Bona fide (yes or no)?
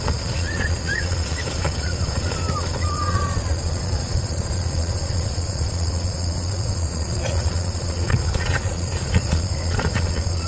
no